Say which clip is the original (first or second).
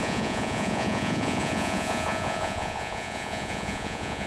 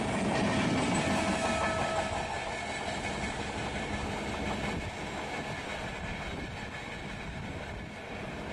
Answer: second